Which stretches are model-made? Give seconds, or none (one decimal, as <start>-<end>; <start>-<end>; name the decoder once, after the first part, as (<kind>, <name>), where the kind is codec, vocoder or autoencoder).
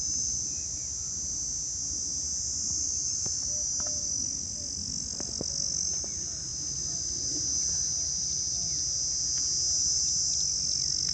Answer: 0.0-0.8 (vocoder, BigVGAN v2); 2.7-4.8; 5.5-11.1